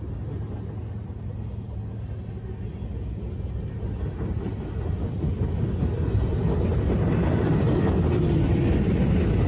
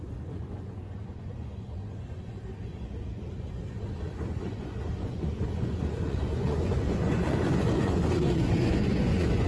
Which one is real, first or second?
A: first